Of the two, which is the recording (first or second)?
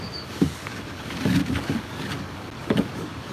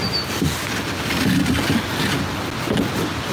second